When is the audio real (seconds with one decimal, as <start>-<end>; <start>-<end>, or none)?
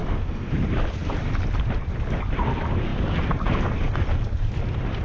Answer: 0.5-5.0